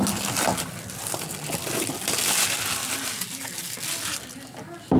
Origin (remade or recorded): recorded